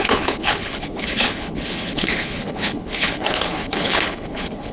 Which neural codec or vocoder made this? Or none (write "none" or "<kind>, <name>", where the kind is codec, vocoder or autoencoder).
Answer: codec, HILCodec